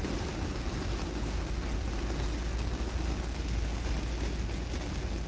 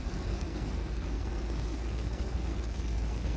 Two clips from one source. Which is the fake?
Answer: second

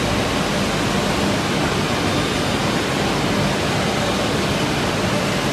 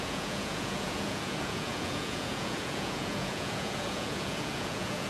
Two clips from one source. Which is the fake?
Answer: second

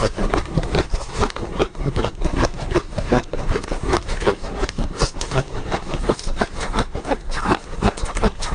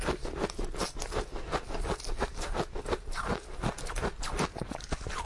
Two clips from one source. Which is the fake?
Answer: first